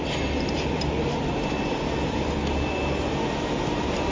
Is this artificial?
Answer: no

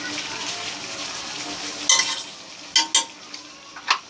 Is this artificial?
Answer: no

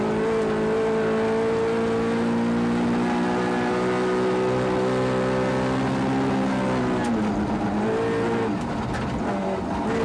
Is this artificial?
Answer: no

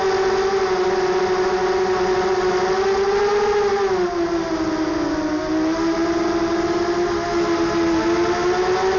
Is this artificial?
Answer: no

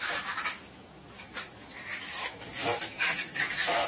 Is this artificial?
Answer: yes